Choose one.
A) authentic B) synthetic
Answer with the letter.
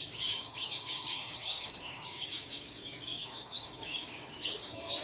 B